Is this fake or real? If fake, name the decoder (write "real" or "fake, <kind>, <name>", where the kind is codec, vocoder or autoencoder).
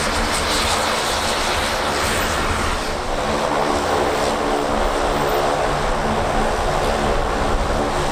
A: real